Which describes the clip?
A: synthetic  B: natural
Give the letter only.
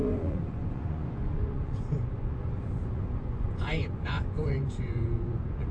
A